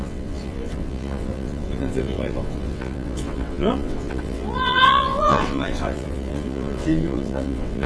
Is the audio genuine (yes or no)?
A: no